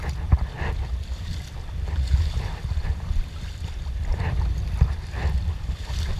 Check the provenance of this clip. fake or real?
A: real